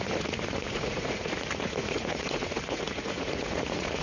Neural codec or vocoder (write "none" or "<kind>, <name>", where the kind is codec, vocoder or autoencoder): vocoder, Vocos